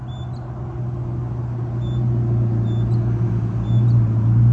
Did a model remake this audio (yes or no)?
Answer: no